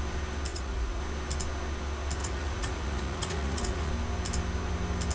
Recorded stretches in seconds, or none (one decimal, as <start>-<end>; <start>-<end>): 0.0-0.5; 1.0-2.2; 3.9-5.1